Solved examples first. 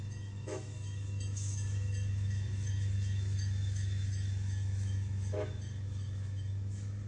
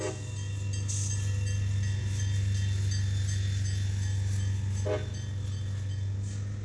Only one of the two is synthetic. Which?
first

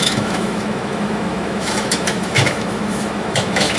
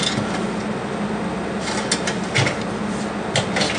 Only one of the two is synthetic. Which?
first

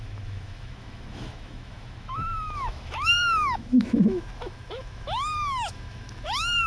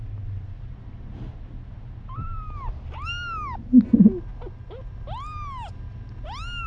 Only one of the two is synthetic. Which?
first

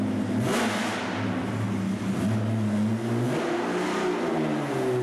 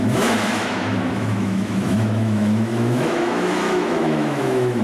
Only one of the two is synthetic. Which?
second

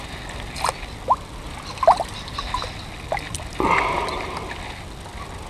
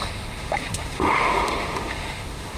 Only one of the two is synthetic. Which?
second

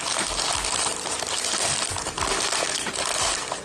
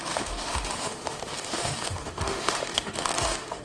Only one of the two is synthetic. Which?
second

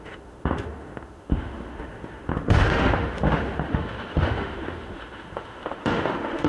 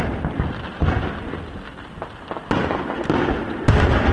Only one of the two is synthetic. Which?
first